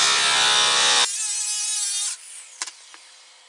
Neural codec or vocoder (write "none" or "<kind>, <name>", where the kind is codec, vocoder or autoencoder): none